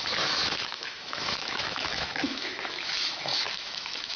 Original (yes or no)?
no